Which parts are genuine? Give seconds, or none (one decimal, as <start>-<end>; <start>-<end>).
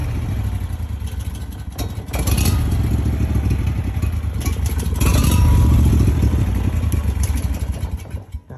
0.0-8.6